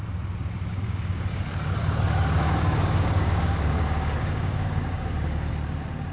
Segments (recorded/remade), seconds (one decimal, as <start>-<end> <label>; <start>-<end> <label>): 0.0-0.7 recorded; 0.7-1.4 remade; 1.4-1.8 recorded; 1.8-5.5 remade; 5.5-6.1 recorded